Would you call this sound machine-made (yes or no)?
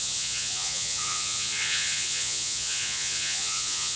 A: yes